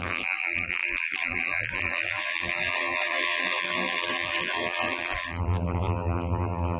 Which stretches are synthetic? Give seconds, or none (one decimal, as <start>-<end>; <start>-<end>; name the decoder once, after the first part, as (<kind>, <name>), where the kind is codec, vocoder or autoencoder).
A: 0.0-6.8 (vocoder, BigVGAN v2)